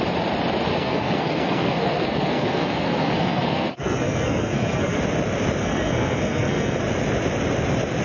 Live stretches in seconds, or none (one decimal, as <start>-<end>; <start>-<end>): 0.0-0.7; 5.0-5.6; 6.8-8.0